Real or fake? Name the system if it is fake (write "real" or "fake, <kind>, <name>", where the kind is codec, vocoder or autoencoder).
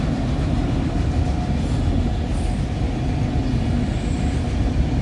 real